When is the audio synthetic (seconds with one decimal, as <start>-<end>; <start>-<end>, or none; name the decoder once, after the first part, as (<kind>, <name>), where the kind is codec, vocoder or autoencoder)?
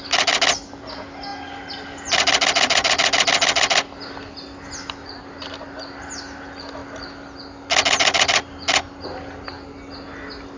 none